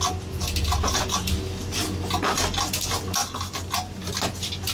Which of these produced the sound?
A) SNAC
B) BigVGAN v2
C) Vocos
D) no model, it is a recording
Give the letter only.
D